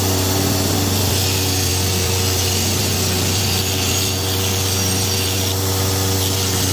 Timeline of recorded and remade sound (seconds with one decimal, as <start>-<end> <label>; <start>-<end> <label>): 0.0-6.7 recorded